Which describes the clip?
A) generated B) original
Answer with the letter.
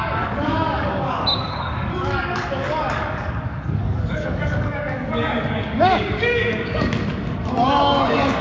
A